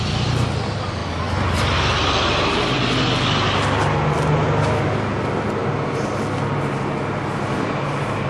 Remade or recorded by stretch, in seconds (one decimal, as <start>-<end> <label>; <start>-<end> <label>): 0.0-8.3 recorded